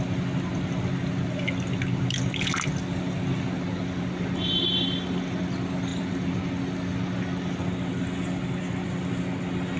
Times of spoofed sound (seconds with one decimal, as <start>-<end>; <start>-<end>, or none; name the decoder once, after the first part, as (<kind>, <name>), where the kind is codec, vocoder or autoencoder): none